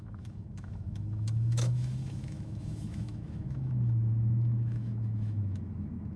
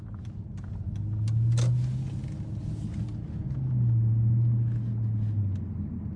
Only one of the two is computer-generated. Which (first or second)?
first